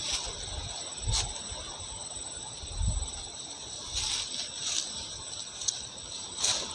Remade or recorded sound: recorded